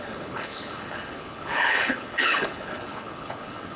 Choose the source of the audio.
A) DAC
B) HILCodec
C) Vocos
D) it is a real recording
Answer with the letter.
B